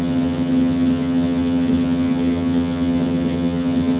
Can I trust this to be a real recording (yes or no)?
no